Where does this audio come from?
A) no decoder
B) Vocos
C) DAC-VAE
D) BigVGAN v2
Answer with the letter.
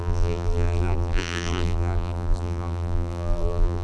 D